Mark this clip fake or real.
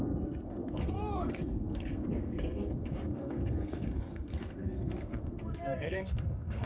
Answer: fake